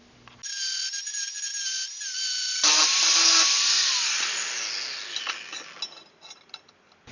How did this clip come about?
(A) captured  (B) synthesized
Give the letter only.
A